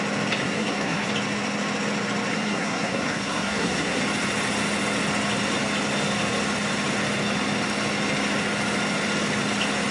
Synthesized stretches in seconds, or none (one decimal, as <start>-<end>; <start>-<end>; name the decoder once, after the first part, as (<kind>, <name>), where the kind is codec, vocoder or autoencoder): 0.4-1.1 (codec, SNAC); 2.3-4.0